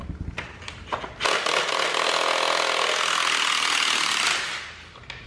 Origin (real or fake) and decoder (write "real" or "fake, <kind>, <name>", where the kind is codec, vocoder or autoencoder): real